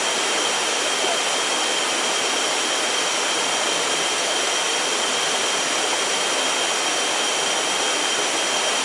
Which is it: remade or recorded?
recorded